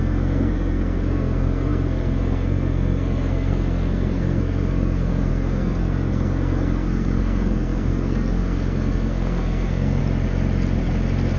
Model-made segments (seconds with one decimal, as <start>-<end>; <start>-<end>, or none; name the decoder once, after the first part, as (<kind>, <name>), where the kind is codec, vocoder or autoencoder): 0.0-10.0 (codec, SNAC)